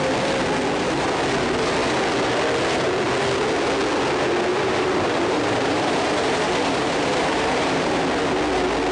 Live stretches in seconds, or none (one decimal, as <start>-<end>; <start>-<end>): 0.0-4.5; 8.0-8.9